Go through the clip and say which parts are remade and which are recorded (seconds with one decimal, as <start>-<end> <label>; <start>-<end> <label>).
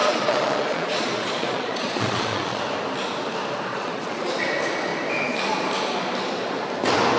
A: 0.0-2.6 remade; 2.6-3.7 recorded; 3.7-4.5 remade; 4.5-7.2 recorded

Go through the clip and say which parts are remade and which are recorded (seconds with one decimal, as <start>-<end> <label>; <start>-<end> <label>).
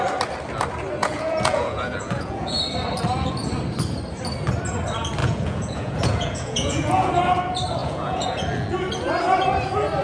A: 0.0-1.0 recorded; 1.0-2.6 remade; 2.6-5.2 recorded; 5.2-7.1 remade; 7.1-7.8 recorded; 7.8-8.4 remade; 8.4-10.0 recorded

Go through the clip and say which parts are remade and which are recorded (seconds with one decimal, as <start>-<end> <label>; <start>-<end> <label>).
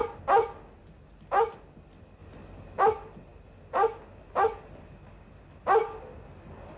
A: 0.0-6.8 recorded